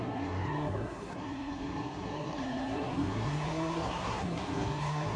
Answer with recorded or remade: remade